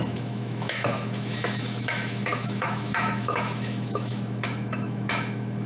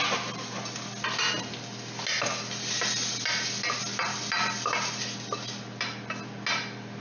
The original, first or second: second